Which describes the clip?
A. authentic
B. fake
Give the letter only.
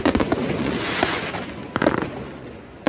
B